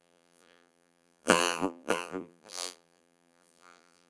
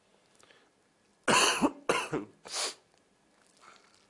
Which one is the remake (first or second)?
first